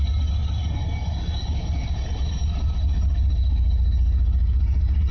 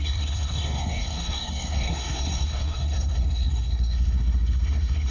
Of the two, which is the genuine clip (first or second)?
first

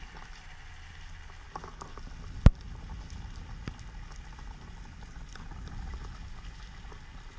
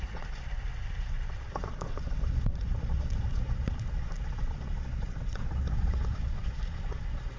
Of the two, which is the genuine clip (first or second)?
first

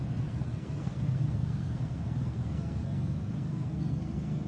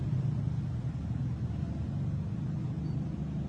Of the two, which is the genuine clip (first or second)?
second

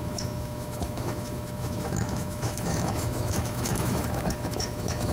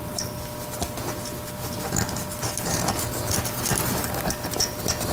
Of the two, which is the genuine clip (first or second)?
second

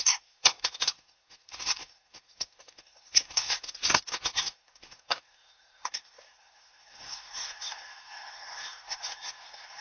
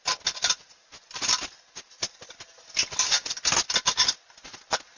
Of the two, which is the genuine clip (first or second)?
second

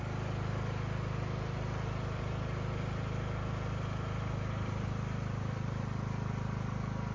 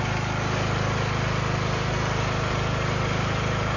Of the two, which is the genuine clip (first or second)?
second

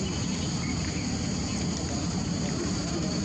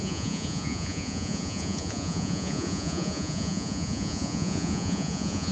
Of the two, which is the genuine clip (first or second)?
first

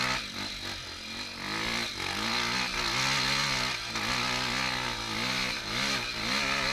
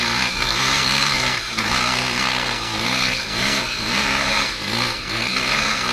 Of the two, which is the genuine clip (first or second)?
first